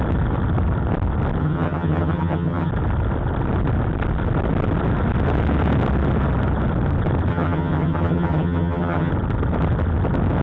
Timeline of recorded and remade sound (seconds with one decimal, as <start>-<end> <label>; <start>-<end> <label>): 0.0-1.4 recorded; 1.4-2.7 remade; 2.7-7.3 recorded; 7.3-9.1 remade; 9.1-10.4 recorded